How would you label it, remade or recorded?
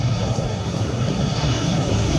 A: remade